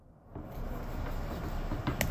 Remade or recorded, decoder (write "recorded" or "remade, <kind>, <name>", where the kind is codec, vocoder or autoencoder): recorded